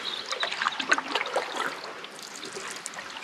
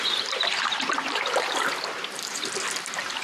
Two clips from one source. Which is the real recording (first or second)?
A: first